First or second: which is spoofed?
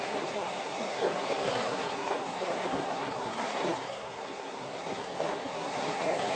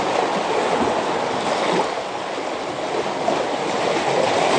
first